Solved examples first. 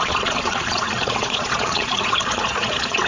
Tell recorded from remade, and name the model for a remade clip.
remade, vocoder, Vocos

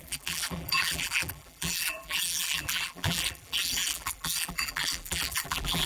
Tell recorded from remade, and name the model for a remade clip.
remade, vocoder, BigVGAN v2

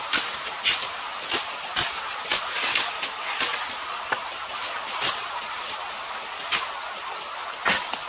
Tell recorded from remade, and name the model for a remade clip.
recorded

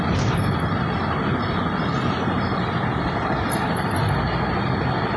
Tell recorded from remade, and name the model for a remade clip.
recorded